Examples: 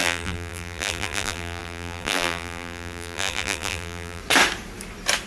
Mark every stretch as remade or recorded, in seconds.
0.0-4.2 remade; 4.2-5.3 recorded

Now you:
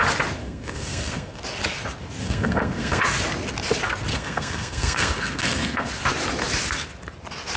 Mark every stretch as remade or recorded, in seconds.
0.0-0.4 recorded; 0.4-1.4 remade; 1.4-2.2 recorded; 2.2-3.0 remade; 3.0-4.1 recorded; 4.1-5.9 remade; 5.9-7.6 recorded

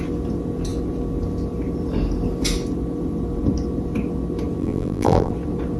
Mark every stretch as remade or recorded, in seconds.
0.0-4.6 recorded; 4.6-5.3 remade; 5.3-5.8 recorded

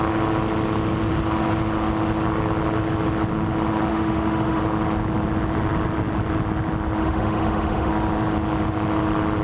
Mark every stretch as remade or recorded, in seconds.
0.0-3.9 recorded; 3.9-4.6 remade; 4.6-7.0 recorded; 7.0-7.9 remade; 7.9-9.4 recorded

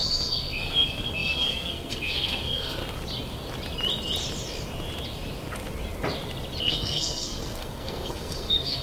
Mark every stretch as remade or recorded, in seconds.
0.0-2.8 remade; 2.8-6.6 recorded; 6.6-8.8 remade

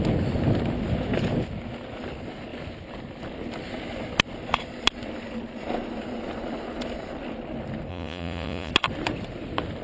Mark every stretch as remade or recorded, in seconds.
0.0-7.9 recorded; 7.9-8.7 remade; 8.7-9.8 recorded

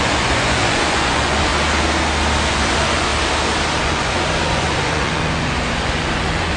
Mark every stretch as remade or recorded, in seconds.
0.0-1.5 remade; 1.5-2.5 recorded; 2.5-3.1 remade; 3.1-3.8 recorded; 3.8-6.6 remade

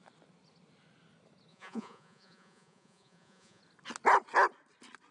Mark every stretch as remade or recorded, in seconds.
0.0-1.5 recorded; 1.5-3.6 remade; 3.6-5.1 recorded